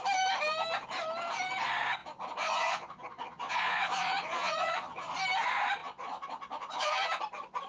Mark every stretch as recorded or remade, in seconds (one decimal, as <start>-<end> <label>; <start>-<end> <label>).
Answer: 0.0-2.0 recorded; 2.0-5.1 remade; 5.1-5.8 recorded; 5.8-7.2 remade; 7.2-7.7 recorded

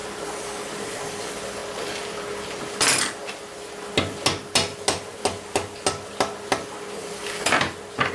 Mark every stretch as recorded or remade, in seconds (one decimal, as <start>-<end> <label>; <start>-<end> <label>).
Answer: 0.0-8.1 recorded

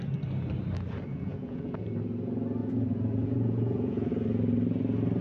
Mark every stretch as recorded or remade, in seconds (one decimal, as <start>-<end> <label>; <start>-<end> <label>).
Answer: 0.0-1.1 recorded; 1.1-1.8 remade; 1.8-2.6 recorded; 2.6-4.1 remade; 4.1-5.2 recorded

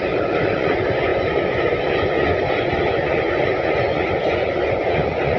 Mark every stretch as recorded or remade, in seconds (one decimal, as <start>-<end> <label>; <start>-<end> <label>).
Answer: 0.0-5.4 remade